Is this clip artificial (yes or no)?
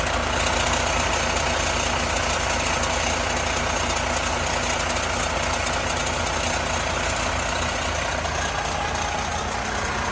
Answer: no